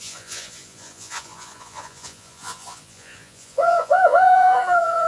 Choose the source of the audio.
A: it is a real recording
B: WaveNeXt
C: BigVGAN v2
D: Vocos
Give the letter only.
D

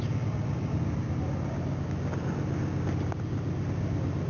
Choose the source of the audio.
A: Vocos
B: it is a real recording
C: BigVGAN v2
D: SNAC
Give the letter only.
B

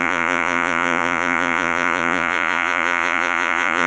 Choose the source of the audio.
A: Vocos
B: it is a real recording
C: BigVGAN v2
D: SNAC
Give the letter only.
A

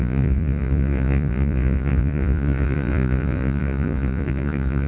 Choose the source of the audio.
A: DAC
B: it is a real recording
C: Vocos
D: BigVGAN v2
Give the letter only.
C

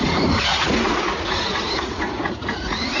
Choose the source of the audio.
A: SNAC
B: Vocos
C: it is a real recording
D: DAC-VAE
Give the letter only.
B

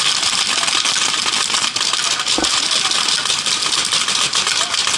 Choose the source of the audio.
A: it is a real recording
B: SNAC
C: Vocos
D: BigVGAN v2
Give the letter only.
A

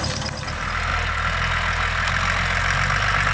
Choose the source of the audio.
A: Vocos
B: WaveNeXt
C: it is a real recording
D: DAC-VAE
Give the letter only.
C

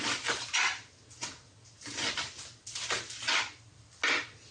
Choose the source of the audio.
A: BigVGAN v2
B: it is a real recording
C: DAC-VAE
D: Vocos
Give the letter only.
B